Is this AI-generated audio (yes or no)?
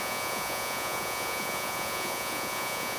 yes